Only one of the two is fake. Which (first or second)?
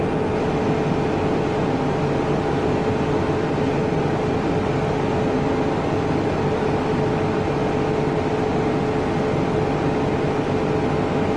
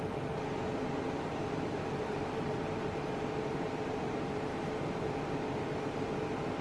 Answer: second